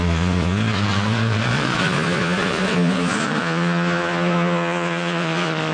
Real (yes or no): no